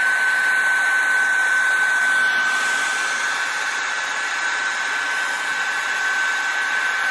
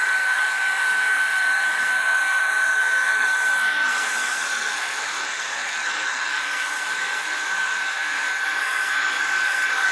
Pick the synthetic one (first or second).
second